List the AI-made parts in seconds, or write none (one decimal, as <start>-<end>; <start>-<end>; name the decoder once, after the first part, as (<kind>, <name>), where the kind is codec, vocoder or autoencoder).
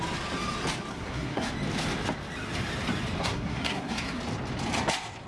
0.9-1.5 (codec, SNAC); 3.2-4.2